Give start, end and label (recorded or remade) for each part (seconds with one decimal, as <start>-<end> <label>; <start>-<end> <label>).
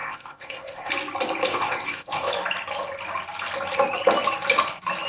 0.0-0.9 remade; 0.9-1.5 recorded; 1.5-2.3 remade; 2.3-5.1 recorded